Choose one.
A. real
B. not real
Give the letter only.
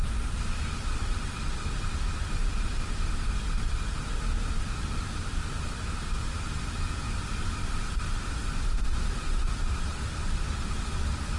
A